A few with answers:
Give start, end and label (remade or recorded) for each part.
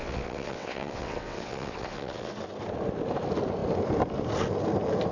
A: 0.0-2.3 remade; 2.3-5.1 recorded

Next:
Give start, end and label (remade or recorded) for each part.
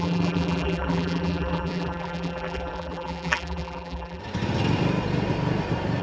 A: 0.0-4.2 remade; 4.2-6.0 recorded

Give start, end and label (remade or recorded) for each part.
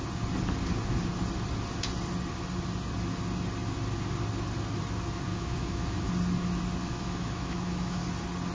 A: 0.0-5.3 recorded; 5.3-6.1 remade; 6.1-6.8 recorded; 6.8-8.0 remade; 8.0-8.5 recorded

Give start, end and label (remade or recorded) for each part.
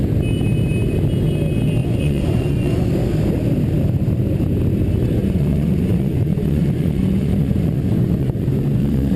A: 0.0-1.8 recorded; 1.8-2.9 remade; 2.9-5.2 recorded; 5.2-9.2 remade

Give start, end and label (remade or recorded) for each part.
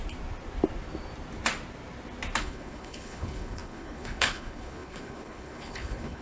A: 0.0-2.4 recorded; 2.4-6.2 remade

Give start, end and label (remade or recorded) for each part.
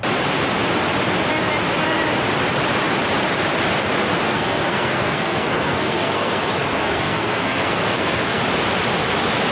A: 0.0-4.3 recorded; 4.3-8.4 remade; 8.4-9.5 recorded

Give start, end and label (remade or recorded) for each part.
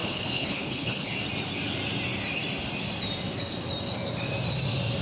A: 0.0-1.1 remade; 1.1-5.0 recorded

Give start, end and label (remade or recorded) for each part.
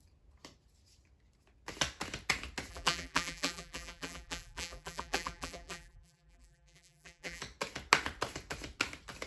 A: 0.0-2.7 recorded; 2.7-7.4 remade; 7.4-9.3 recorded